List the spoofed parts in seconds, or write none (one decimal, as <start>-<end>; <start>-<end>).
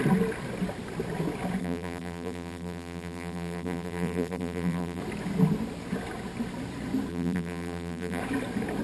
1.6-5.0; 7.1-8.2